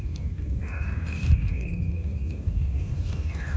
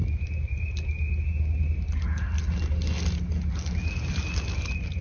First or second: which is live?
second